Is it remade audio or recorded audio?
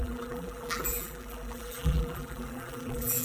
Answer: remade